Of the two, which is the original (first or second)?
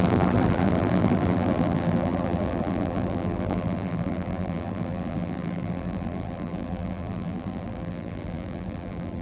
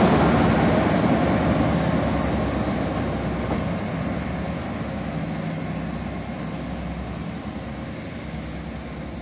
second